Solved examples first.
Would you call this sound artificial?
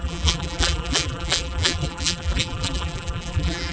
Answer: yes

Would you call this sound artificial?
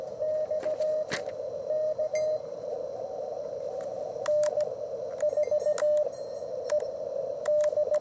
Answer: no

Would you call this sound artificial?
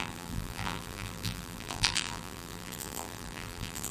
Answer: yes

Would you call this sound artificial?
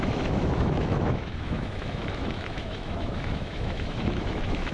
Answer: yes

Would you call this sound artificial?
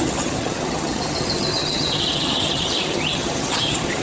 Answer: yes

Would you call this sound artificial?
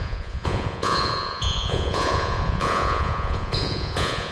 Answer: yes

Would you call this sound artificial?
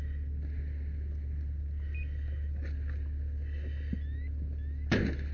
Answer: no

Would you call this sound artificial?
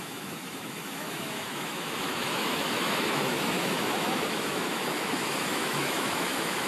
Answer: yes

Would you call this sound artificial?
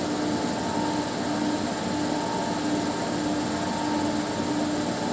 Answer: no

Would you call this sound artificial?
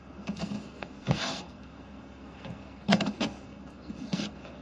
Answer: yes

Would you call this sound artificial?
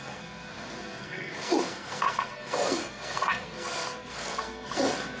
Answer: yes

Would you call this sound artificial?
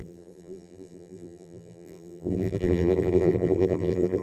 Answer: yes